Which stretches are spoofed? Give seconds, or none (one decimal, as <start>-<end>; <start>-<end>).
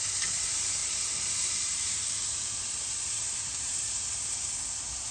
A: 0.8-3.9